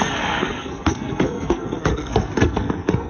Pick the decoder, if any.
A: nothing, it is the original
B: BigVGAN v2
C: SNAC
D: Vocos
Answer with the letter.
C